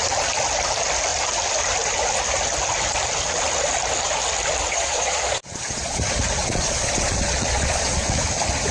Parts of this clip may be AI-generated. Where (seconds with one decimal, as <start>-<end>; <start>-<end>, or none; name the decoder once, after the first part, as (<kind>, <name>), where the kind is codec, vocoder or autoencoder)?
4.7-6.0 (vocoder, Vocos); 6.4-8.2